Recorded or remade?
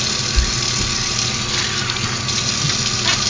recorded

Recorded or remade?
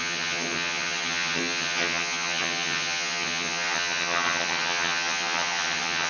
remade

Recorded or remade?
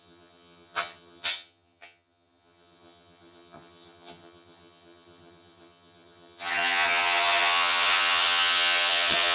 remade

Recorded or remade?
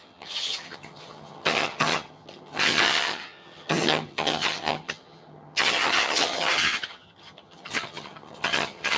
remade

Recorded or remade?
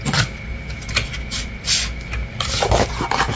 recorded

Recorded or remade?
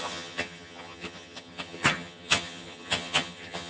remade